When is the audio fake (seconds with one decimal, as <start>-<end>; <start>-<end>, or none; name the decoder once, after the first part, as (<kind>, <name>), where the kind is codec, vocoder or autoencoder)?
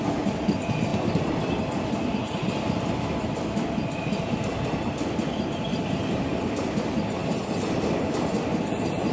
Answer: none